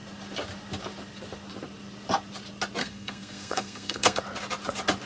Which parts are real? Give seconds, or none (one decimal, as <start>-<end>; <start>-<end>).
0.0-2.8; 4.2-5.1